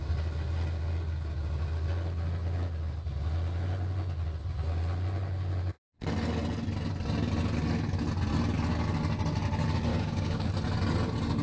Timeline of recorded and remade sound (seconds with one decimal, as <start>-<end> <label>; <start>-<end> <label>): 0.0-9.9 recorded; 9.9-10.5 remade; 10.5-11.4 recorded

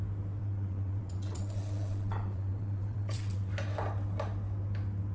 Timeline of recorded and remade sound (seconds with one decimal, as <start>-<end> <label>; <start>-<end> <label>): 0.0-0.4 recorded; 0.4-3.5 remade; 3.5-5.1 recorded

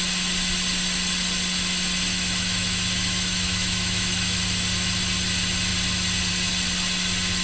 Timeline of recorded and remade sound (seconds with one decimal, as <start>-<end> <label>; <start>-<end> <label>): 0.0-2.1 recorded; 2.1-4.4 remade; 4.4-7.4 recorded

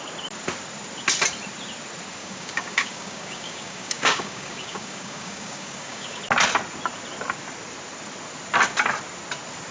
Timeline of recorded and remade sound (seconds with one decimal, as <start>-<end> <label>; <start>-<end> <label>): 0.0-2.2 recorded; 2.2-6.2 remade; 6.2-9.7 recorded

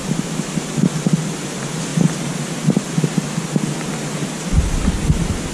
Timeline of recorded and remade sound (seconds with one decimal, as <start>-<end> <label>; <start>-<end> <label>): 0.0-5.5 recorded

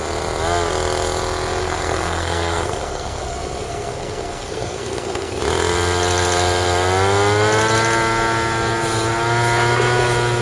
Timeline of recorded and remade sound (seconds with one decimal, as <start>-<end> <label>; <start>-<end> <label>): 0.0-1.6 recorded; 1.6-5.4 remade; 5.4-10.4 recorded

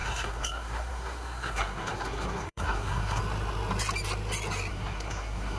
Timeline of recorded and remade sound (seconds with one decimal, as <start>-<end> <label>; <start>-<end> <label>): 0.0-3.2 remade; 3.2-4.7 recorded; 4.7-5.6 remade